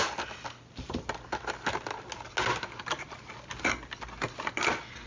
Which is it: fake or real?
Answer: real